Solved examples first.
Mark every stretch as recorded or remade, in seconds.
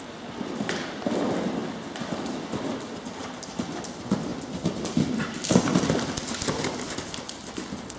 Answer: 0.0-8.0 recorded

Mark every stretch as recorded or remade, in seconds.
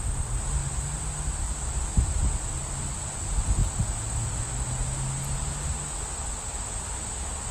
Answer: 0.0-7.5 recorded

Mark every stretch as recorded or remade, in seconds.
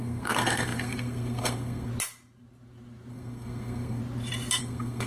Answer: 0.0-1.9 remade; 1.9-3.1 recorded; 3.1-4.0 remade; 4.0-4.6 recorded; 4.6-5.1 remade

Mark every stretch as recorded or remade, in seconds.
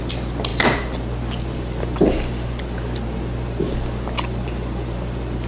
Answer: 0.0-5.5 recorded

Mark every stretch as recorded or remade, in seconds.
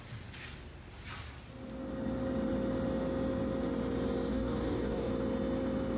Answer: 0.0-4.3 recorded; 4.3-5.1 remade; 5.1-6.0 recorded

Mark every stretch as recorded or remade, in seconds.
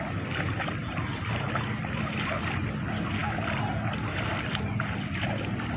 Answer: 0.0-5.8 recorded